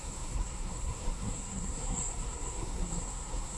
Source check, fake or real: fake